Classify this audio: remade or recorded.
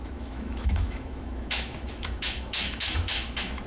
remade